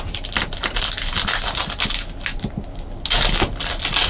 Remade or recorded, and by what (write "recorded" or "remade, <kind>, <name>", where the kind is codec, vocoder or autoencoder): recorded